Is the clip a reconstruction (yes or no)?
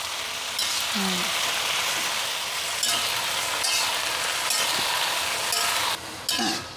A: no